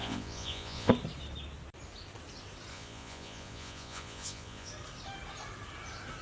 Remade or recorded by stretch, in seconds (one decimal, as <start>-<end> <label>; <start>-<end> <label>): 0.0-0.9 remade; 0.9-2.7 recorded; 2.7-4.7 remade; 4.7-6.2 recorded